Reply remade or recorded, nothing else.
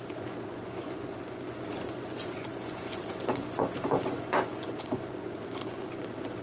remade